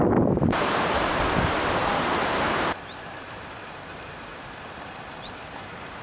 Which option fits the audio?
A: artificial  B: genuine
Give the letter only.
A